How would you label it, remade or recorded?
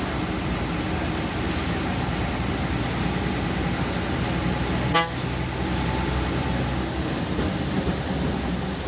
recorded